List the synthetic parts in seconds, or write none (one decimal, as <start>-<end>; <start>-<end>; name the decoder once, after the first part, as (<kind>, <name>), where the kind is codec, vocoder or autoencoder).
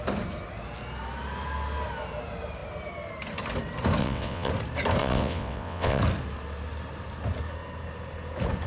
4.0-4.5 (vocoder, WaveNeXt); 5.0-6.0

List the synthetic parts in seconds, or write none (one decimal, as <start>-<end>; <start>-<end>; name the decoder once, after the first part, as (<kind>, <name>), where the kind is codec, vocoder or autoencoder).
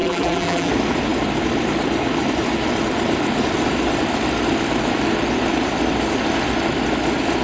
0.0-0.7 (vocoder, BigVGAN v2)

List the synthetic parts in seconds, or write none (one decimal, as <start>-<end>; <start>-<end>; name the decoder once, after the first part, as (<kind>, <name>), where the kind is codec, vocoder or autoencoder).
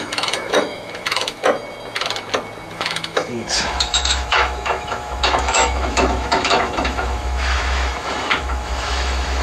0.0-1.4 (autoencoder, DAC-VAE); 2.7-9.4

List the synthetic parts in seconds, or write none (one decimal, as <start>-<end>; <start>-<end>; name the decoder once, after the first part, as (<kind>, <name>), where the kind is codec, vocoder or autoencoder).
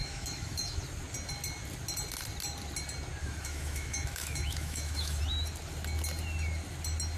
0.0-0.8 (autoencoder, DAC-VAE); 3.2-5.2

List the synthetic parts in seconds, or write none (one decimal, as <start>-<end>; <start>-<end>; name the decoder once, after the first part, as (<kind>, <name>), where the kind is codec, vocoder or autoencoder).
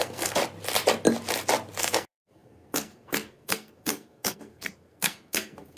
0.0-0.4 (codec, SNAC); 1.8-5.8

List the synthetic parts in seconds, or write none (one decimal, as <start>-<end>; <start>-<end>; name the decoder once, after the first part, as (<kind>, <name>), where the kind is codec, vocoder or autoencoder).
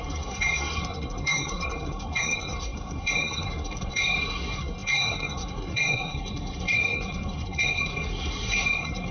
0.0-9.1 (codec, SNAC)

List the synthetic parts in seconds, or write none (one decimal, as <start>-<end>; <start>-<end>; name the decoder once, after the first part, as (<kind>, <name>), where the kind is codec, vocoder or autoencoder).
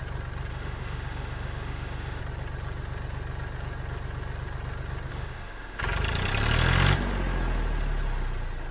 0.5-2.2 (autoencoder, DAC-VAE); 5.1-5.8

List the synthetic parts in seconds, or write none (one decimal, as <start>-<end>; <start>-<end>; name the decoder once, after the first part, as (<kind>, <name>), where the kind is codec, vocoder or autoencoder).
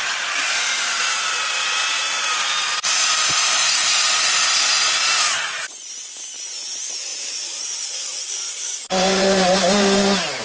7.1-10.4 (vocoder, BigVGAN v2)